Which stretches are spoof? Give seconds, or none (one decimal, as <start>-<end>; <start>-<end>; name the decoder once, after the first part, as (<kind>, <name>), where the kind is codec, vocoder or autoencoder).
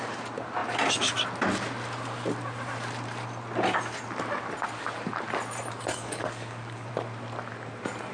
5.9-6.9 (codec, DAC)